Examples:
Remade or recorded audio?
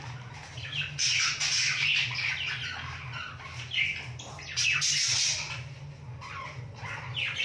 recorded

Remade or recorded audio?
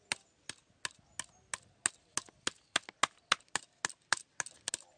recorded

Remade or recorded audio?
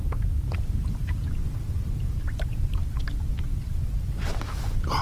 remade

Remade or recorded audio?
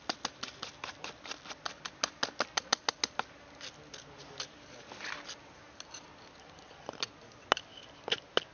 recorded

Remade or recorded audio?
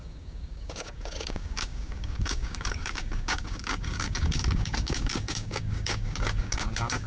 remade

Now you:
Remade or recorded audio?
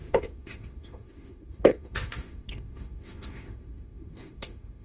remade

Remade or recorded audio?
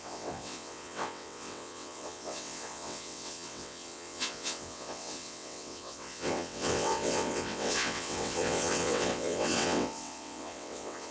remade